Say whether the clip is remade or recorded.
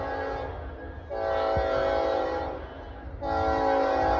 recorded